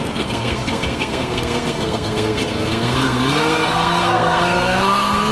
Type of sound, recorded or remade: remade